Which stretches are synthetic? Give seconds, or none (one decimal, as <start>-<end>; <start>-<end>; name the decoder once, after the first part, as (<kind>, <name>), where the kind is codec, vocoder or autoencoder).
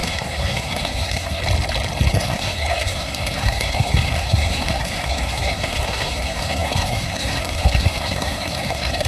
0.0-1.4 (codec, SNAC); 2.1-9.1